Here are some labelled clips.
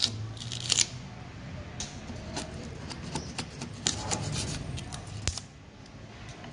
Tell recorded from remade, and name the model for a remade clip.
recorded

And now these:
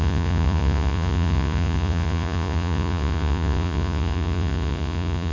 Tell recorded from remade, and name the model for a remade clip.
remade, vocoder, Vocos